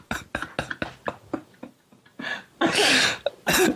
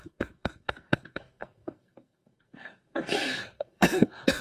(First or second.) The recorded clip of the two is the first